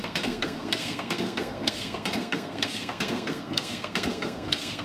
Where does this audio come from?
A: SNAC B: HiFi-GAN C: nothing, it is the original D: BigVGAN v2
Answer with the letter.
A